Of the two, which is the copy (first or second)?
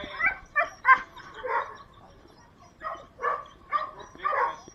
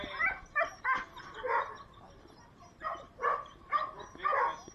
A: first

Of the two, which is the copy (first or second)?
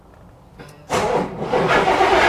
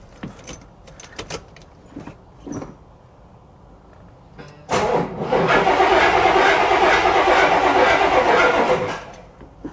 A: first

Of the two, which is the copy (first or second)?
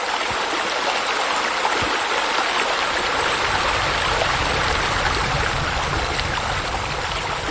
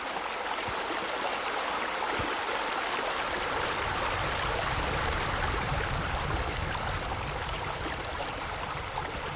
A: second